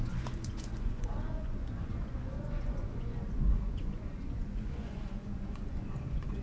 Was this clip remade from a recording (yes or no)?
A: yes